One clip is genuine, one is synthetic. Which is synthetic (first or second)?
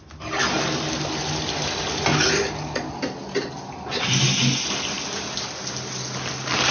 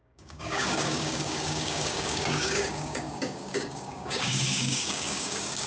second